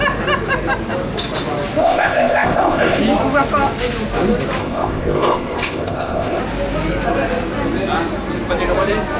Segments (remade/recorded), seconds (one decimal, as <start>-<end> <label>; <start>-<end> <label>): 0.0-1.8 recorded; 1.8-3.0 remade; 3.0-4.6 recorded; 4.6-6.4 remade; 6.4-9.2 recorded